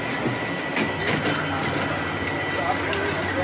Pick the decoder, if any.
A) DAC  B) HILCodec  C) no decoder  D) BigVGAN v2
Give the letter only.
C